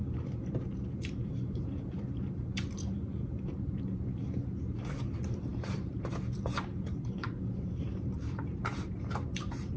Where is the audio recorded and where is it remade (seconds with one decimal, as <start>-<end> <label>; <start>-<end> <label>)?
0.0-9.8 remade